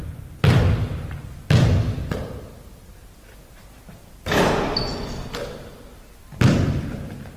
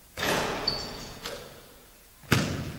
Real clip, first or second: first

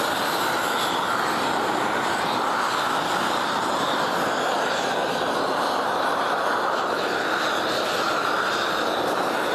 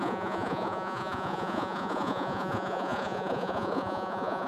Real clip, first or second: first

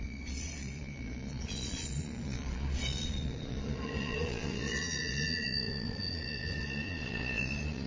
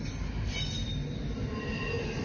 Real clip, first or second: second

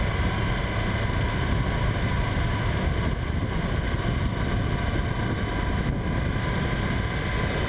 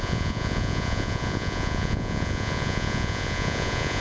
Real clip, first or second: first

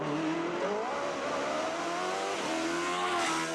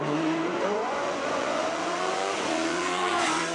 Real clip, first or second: first